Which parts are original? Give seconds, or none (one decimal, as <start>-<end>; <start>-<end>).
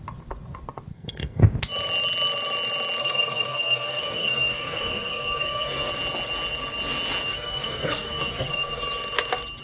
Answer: 0.0-0.9; 1.4-3.0; 5.9-7.3; 8.8-9.6